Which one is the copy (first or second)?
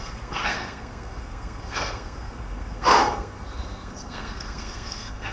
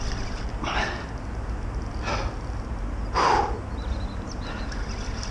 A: first